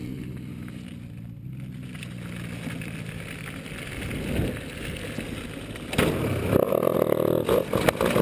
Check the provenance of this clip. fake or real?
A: real